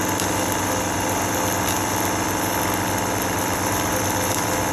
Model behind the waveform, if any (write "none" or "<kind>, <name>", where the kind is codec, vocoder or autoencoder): none